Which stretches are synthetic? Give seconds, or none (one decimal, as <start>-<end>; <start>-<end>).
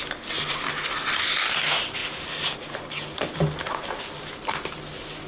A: none